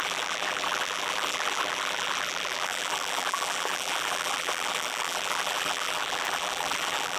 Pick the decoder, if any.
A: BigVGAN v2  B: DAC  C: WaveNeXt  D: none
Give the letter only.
A